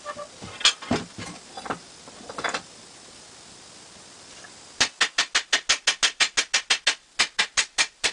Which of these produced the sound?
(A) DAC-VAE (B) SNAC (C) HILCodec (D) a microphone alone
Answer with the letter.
D